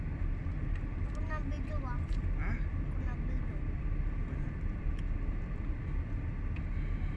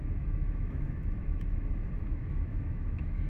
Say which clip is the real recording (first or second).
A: first